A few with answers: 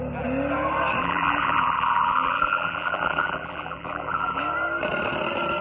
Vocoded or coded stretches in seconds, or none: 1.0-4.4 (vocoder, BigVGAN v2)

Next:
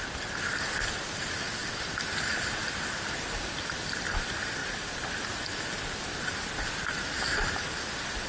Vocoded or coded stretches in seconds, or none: none

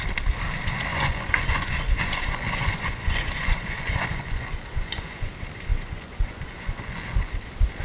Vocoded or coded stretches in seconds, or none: 0.9-5.3 (vocoder, Vocos); 5.7-7.3

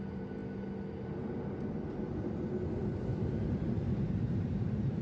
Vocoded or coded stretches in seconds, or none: 3.1-5.0 (vocoder, BigVGAN v2)

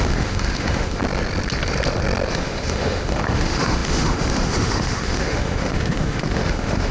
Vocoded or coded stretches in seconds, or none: 0.0-1.0 (autoencoder, DAC-VAE); 2.3-6.9